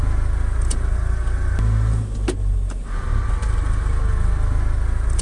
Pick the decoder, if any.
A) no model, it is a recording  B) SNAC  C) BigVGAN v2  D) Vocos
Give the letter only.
A